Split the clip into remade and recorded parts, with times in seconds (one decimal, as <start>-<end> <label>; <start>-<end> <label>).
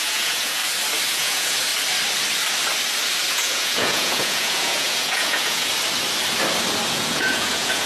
0.0-0.6 remade; 0.6-1.1 recorded; 1.1-1.7 remade; 1.7-3.3 recorded; 3.3-5.7 remade; 5.7-6.9 recorded; 6.9-7.9 remade